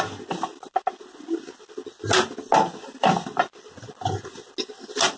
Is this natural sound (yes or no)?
yes